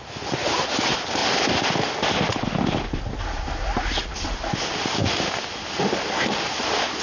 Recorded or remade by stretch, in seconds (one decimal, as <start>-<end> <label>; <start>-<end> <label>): 0.0-7.0 recorded